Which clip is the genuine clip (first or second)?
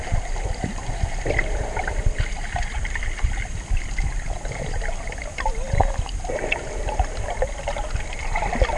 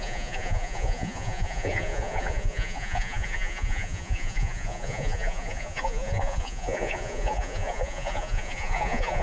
first